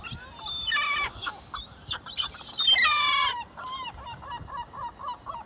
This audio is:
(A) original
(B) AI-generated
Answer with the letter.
A